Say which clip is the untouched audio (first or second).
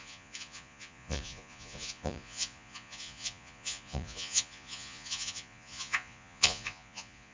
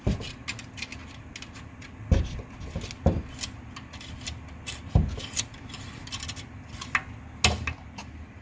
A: second